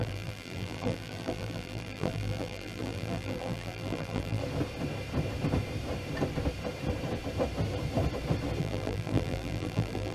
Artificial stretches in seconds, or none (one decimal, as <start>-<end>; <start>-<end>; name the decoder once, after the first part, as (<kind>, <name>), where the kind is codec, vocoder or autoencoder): 0.0-4.4 (vocoder, BigVGAN v2); 8.6-10.1